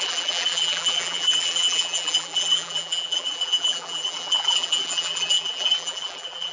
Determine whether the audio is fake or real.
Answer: fake